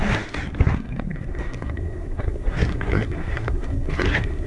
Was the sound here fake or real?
fake